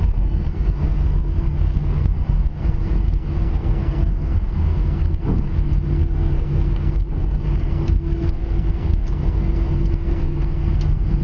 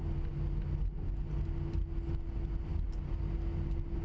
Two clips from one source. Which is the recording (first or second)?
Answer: second